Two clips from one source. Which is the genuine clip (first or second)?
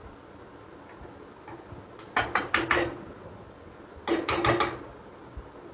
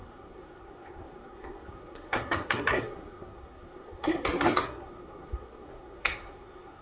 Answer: first